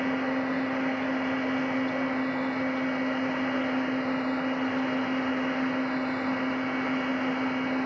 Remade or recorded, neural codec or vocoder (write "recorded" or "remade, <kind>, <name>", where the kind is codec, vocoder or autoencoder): recorded